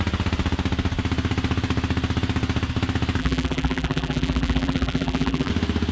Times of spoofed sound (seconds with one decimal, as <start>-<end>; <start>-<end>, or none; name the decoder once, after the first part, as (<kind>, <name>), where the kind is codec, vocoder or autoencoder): 3.2-5.5 (vocoder, BigVGAN v2)